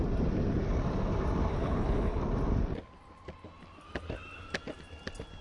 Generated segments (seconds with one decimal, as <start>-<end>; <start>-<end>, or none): 1.5-2.2